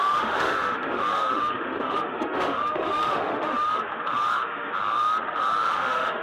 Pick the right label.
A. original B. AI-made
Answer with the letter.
B